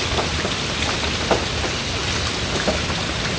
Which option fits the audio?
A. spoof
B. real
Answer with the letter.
B